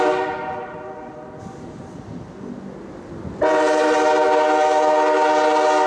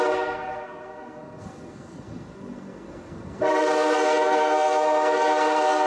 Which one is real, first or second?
first